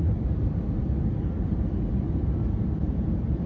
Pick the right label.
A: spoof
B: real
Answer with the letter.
A